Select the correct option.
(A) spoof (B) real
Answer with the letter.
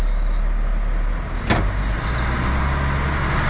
B